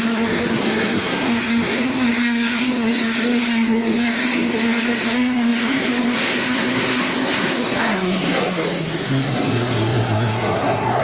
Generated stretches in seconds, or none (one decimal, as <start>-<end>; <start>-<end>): 0.0-11.0